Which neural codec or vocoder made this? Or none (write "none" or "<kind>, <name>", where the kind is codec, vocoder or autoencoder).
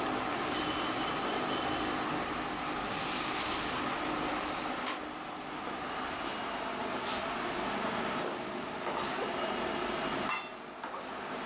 none